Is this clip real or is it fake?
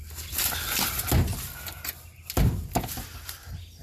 real